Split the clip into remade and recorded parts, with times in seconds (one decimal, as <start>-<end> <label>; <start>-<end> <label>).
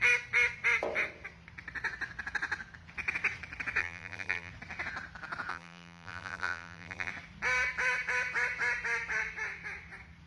0.0-3.8 recorded; 3.8-4.5 remade; 4.5-5.5 recorded; 5.5-7.1 remade; 7.1-10.3 recorded